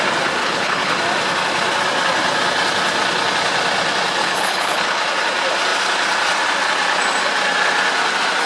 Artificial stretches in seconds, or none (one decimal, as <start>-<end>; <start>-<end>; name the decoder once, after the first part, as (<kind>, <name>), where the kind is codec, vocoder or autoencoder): 0.4-1.0 (codec, HILCodec); 4.2-5.0